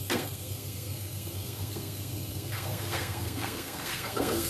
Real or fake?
fake